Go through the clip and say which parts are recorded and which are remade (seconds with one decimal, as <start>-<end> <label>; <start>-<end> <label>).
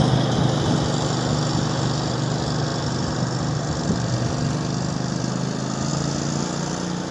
0.0-7.1 recorded